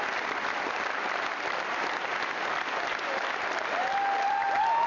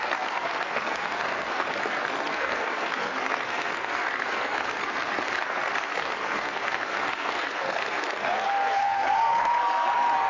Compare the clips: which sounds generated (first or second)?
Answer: second